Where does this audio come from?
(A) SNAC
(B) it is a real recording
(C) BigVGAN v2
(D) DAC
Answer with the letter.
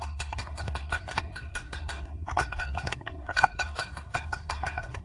A